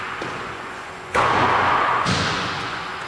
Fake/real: fake